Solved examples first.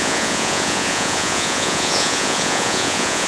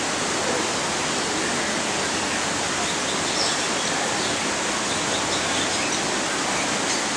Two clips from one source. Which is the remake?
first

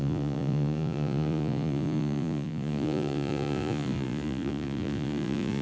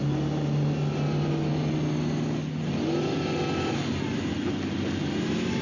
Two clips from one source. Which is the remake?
first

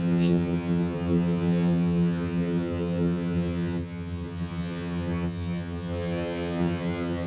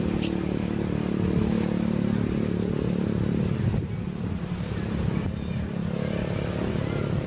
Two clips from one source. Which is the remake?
first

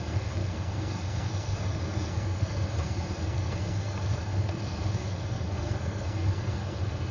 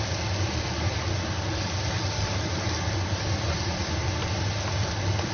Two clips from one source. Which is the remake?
first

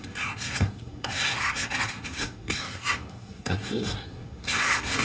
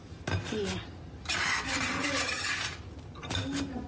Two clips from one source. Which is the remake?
first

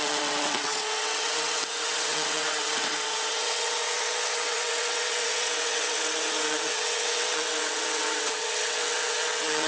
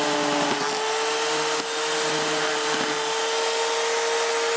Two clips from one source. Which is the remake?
first